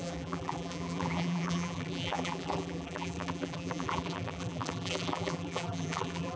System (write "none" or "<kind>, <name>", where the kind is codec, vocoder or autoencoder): vocoder, BigVGAN v2